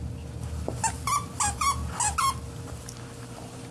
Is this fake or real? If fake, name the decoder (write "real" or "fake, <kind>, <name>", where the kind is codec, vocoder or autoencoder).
real